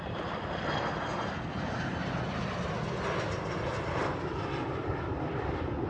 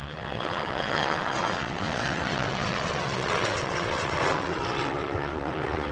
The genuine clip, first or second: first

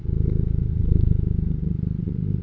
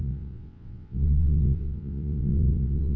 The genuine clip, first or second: first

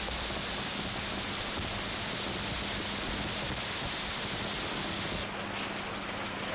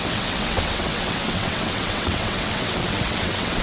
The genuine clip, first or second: first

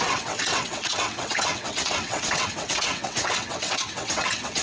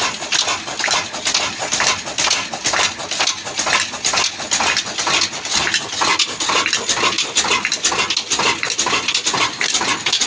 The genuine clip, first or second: second